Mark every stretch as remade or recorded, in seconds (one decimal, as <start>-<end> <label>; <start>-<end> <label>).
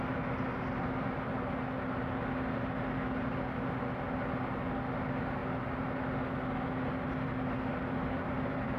0.0-8.8 recorded